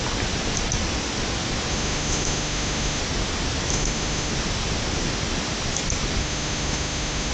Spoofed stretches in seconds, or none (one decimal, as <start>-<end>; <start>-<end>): 1.7-3.0; 3.7-4.3; 6.2-7.3